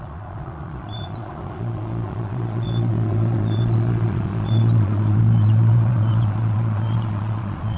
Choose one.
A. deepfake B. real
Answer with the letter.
A